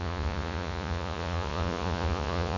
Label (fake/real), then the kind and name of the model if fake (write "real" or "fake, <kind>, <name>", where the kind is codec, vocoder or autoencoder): fake, vocoder, Vocos